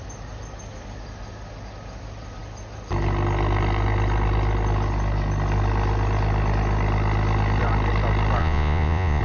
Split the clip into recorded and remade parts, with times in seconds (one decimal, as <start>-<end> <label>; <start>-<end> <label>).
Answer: 0.0-8.4 recorded; 8.4-9.2 remade